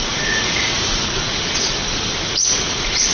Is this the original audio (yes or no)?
no